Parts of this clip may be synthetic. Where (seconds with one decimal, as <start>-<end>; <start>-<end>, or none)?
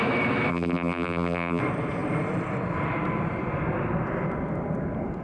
0.5-1.6